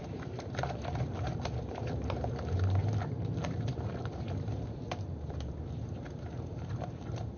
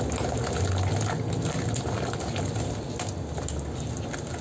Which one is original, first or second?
second